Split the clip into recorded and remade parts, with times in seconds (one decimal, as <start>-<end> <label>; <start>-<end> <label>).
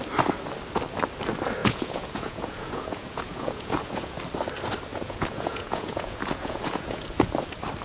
0.0-1.6 recorded; 1.6-4.2 remade; 4.2-4.9 recorded; 4.9-7.3 remade; 7.3-7.8 recorded